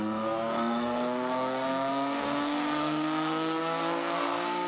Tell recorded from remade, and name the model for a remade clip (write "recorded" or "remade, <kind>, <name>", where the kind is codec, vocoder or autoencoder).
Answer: remade, codec, SNAC